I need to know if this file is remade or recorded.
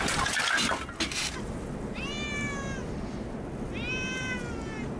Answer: recorded